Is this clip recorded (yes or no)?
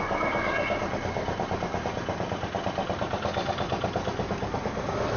yes